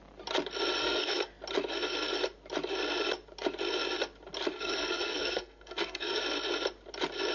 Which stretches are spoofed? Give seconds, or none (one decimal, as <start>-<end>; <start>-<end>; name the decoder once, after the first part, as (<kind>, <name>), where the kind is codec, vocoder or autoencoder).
0.8-1.3 (codec, SNAC); 4.5-6.2